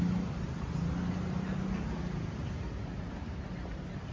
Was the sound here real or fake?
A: real